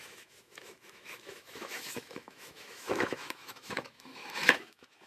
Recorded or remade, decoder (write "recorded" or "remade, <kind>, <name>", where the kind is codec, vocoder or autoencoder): remade, autoencoder, DAC-VAE